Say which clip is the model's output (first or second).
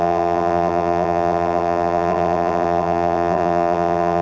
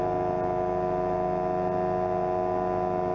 first